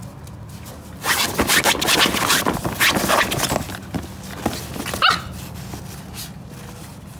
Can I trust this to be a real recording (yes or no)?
yes